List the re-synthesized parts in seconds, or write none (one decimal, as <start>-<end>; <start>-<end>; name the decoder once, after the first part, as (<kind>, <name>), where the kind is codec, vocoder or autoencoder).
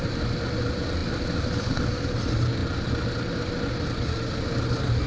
none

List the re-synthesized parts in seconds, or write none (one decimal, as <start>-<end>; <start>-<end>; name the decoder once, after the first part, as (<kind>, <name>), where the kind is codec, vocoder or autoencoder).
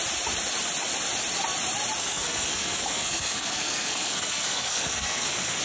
2.0-5.6 (codec, SNAC)